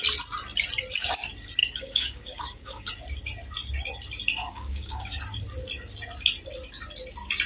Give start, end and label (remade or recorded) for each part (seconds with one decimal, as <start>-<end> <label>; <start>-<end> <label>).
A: 0.0-1.6 recorded; 1.6-2.9 remade; 2.9-4.4 recorded; 4.4-5.2 remade; 5.2-7.5 recorded